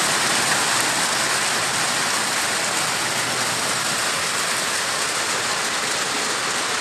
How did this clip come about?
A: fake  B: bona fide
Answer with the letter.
B